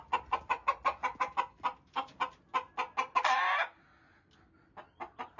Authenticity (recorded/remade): recorded